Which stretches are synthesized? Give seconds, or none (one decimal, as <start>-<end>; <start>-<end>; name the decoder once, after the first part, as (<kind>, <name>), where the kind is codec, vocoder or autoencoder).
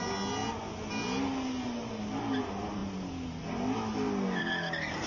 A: none